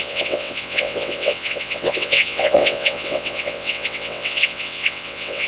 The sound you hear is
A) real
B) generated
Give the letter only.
B